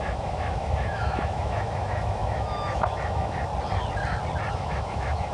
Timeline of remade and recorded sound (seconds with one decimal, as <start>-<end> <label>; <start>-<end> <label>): 0.0-3.5 remade; 3.5-4.5 recorded; 4.5-5.3 remade